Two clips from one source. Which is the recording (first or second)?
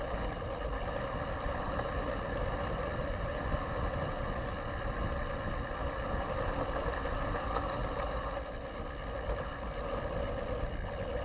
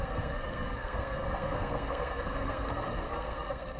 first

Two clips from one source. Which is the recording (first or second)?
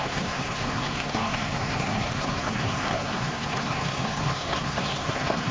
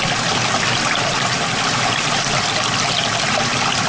second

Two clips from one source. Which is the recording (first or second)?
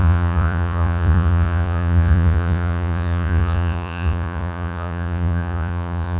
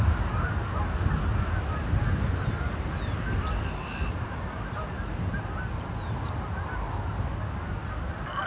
second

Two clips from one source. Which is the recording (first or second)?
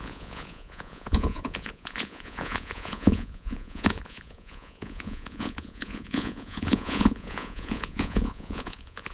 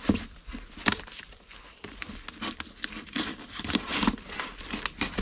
second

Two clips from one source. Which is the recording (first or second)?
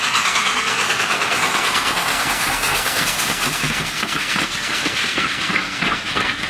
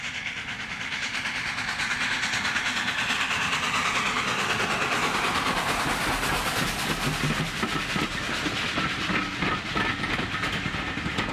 second